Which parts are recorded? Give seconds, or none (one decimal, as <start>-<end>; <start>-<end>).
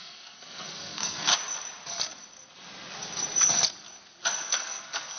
1.3-4.4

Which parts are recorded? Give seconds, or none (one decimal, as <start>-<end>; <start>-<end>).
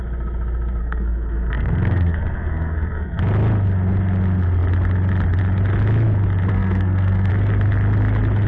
0.0-0.8; 3.2-6.5; 7.3-8.5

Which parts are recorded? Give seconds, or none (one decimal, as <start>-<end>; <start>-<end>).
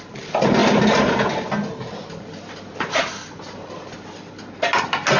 0.0-5.2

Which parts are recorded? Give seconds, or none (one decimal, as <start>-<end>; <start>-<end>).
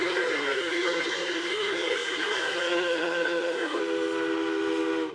3.8-5.1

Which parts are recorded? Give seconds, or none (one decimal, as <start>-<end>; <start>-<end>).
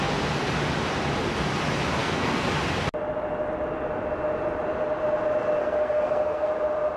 0.0-2.0; 2.5-5.6; 6.5-7.0